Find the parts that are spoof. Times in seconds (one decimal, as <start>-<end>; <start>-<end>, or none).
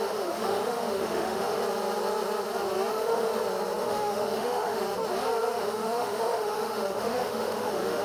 0.0-1.6; 2.9-3.3; 3.8-4.8; 5.6-8.0